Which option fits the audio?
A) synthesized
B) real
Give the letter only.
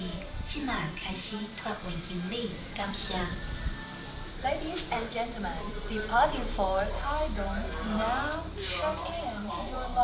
A